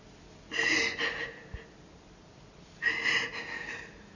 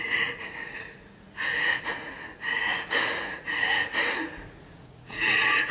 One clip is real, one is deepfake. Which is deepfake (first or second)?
second